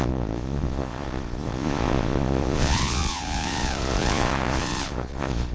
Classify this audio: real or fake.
fake